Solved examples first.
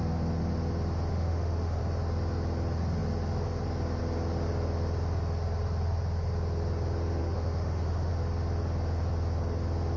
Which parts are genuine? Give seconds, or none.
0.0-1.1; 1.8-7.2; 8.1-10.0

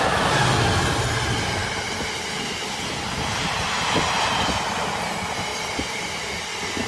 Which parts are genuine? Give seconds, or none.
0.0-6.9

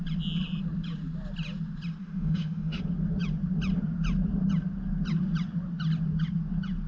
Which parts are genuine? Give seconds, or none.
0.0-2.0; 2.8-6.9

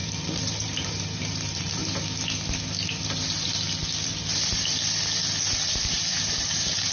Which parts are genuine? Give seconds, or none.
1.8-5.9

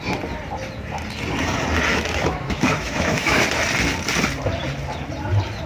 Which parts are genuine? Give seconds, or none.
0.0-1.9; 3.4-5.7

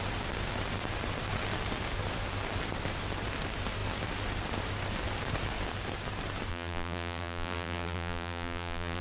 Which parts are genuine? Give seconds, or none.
0.0-6.5